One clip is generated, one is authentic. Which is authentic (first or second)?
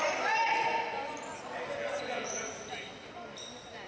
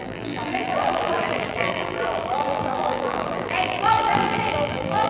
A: first